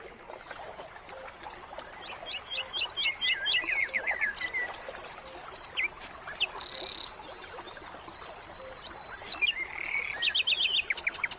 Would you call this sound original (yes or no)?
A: yes